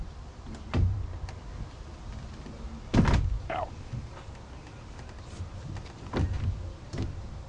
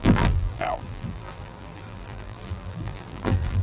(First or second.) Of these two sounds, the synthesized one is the second